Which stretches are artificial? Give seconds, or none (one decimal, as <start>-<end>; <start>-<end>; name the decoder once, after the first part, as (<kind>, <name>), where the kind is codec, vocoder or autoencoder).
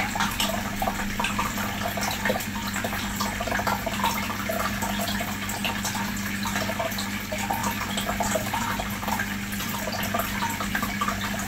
none